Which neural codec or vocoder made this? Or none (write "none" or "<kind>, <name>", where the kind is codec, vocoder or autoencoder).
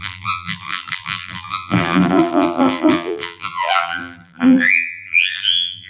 vocoder, BigVGAN v2